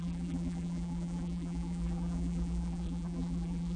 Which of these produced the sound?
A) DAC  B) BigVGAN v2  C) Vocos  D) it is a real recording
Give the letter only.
B